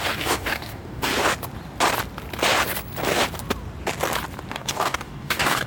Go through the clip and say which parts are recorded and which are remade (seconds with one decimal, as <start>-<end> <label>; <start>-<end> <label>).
0.0-1.1 remade; 1.1-4.5 recorded; 4.5-5.7 remade